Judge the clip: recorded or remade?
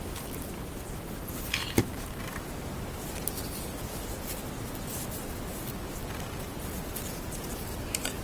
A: recorded